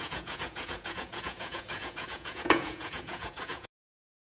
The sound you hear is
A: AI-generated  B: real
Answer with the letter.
A